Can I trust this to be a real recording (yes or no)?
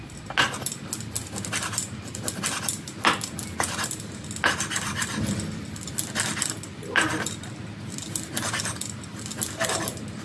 yes